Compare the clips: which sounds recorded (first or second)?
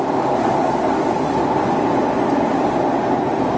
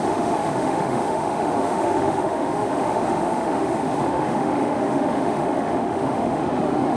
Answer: first